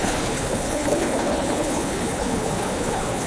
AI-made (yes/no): yes